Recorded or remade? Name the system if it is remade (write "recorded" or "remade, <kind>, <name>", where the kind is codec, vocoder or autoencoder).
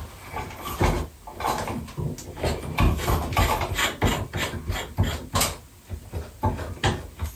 recorded